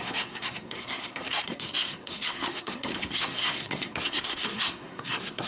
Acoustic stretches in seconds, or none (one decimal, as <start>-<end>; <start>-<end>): none